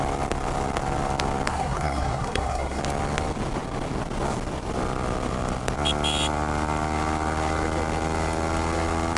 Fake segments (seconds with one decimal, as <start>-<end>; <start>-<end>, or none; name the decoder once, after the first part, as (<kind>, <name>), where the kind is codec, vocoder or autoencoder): 1.5-2.8 (codec, SNAC)